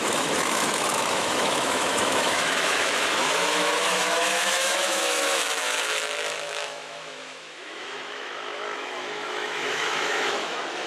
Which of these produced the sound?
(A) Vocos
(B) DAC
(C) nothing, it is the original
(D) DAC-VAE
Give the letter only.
D